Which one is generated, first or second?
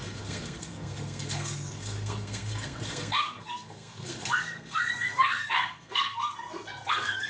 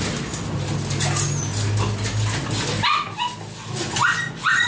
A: first